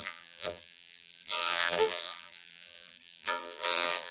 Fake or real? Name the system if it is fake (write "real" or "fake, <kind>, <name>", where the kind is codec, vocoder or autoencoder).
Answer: fake, vocoder, BigVGAN v2